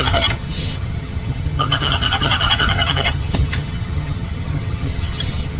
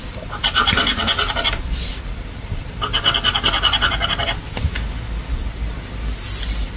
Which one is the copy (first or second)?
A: first